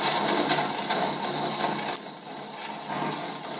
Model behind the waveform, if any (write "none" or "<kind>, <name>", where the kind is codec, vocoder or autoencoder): none